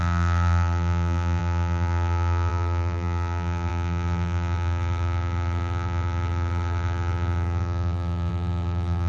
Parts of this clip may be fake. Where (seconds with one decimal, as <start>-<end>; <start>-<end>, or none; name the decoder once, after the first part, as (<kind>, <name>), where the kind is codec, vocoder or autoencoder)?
0.0-9.1 (vocoder, BigVGAN v2)